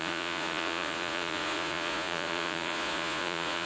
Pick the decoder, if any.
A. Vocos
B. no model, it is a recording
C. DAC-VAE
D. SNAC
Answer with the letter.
A